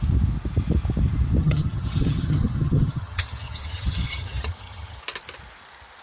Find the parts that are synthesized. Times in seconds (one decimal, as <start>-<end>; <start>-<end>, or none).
1.4-5.0